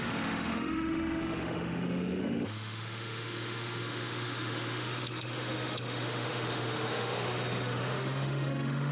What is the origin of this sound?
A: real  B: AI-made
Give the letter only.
B